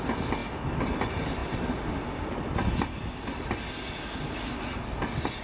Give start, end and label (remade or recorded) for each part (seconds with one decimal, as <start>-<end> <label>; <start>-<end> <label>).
0.0-5.4 recorded